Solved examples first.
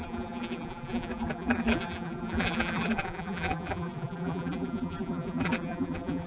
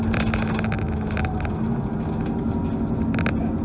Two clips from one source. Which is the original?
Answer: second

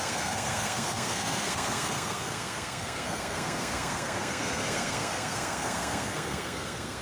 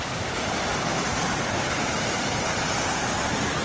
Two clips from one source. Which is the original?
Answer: second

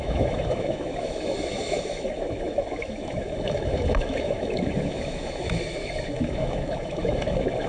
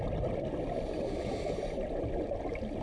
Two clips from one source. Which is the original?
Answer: second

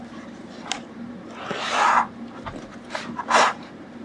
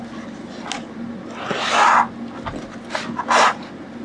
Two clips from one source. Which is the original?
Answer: second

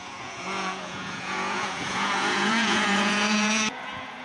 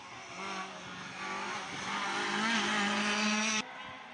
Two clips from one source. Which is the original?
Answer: second